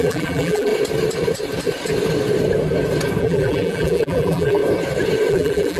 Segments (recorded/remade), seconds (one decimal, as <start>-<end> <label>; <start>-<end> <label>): 0.0-0.7 remade; 0.7-3.2 recorded; 3.2-4.6 remade; 4.6-5.3 recorded; 5.3-5.8 remade